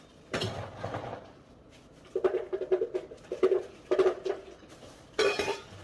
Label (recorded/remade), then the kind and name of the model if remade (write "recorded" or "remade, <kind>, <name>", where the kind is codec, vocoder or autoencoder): remade, vocoder, BigVGAN v2